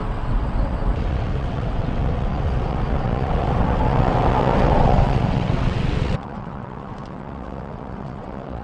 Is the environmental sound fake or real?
fake